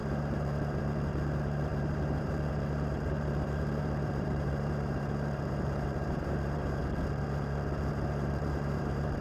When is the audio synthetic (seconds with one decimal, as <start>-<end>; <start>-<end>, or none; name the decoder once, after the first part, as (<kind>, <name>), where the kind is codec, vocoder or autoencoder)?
0.0-6.8 (vocoder, BigVGAN v2); 7.9-9.2

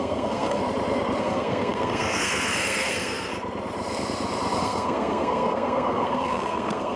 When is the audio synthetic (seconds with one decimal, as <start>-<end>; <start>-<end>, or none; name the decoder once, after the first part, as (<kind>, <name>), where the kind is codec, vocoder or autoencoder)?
0.0-0.6 (codec, SNAC); 1.2-3.3; 4.6-7.0

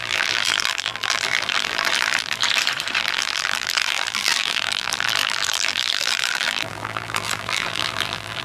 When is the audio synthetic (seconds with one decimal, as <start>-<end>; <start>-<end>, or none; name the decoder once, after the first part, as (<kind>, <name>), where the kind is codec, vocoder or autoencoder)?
0.0-2.4 (vocoder, BigVGAN v2); 3.0-8.4

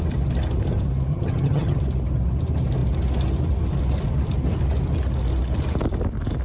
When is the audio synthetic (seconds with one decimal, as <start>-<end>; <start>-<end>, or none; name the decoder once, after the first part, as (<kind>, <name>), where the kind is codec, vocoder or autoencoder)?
1.1-1.8 (vocoder, HiFi-GAN)